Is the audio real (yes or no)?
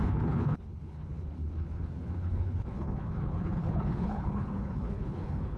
no